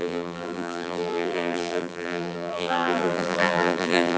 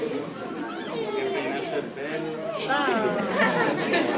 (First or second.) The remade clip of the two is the first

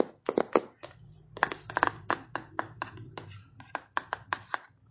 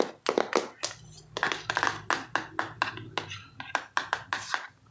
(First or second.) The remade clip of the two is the first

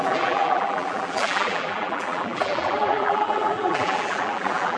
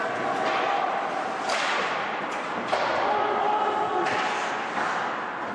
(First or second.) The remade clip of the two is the first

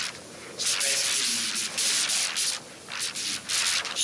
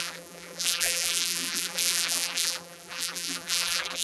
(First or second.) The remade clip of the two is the second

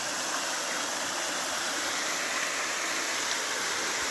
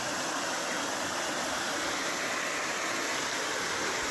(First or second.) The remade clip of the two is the first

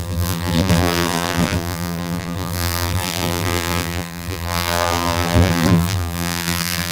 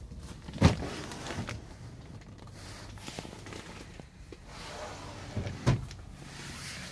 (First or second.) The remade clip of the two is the first